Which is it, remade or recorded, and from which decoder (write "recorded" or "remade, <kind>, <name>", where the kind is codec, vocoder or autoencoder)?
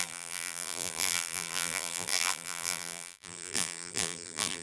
remade, vocoder, BigVGAN v2